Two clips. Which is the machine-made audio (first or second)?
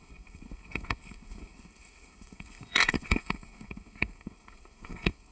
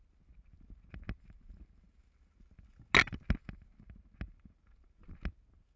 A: first